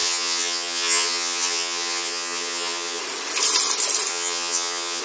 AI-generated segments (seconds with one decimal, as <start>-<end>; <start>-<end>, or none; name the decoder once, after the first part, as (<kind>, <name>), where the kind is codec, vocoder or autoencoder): 0.0-3.0 (vocoder, HiFi-GAN); 4.1-5.0